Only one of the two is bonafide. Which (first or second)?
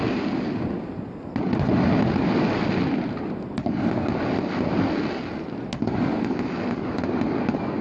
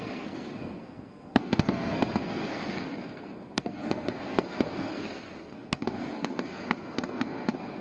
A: first